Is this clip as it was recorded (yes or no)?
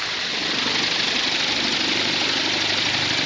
yes